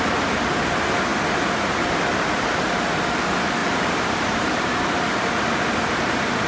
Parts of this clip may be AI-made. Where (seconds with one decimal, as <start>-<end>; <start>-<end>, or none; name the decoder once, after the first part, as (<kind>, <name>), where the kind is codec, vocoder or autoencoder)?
3.6-4.8 (vocoder, BigVGAN v2)